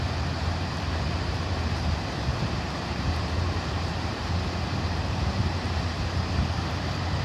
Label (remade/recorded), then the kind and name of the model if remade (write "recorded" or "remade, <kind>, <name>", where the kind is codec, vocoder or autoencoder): remade, vocoder, BigVGAN v2